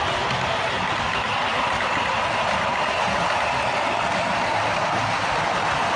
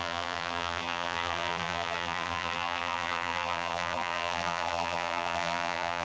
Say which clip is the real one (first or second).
first